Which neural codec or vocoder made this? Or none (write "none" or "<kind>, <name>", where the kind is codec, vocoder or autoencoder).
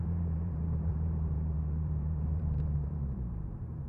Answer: vocoder, BigVGAN v2